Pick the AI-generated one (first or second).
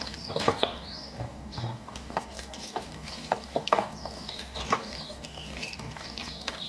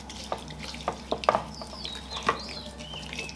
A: first